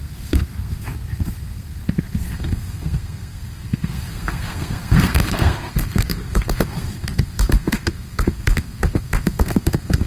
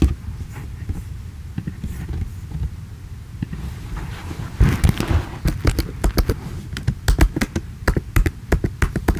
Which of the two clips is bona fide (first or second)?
second